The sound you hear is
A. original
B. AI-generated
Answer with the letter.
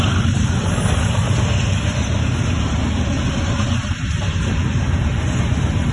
A